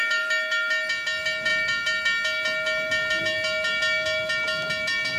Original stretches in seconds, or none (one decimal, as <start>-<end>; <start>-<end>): 0.0-5.2